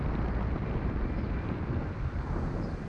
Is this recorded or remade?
recorded